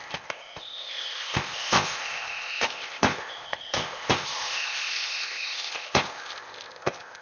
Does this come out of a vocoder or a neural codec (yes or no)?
yes